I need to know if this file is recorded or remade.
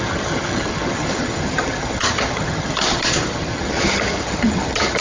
remade